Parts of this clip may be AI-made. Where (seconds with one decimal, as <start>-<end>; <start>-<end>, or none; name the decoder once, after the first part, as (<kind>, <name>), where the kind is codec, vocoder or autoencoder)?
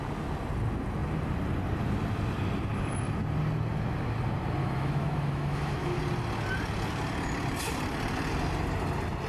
4.6-6.0 (autoencoder, DAC-VAE)